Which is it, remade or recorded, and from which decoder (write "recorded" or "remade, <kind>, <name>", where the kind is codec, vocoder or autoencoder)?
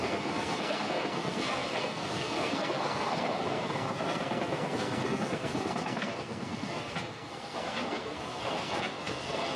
remade, codec, SNAC